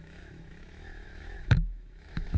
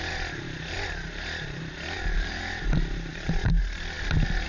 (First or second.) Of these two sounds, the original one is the second